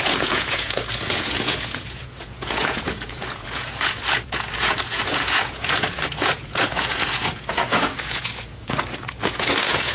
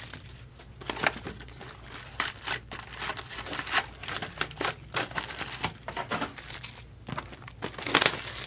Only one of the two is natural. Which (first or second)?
second